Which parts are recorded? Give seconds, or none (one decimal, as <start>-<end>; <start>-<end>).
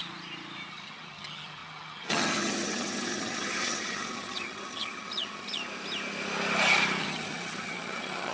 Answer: 0.0-0.7; 5.6-7.0